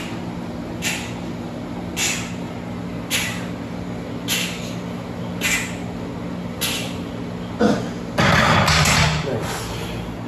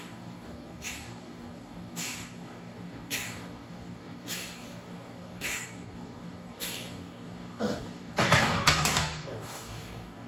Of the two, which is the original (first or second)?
first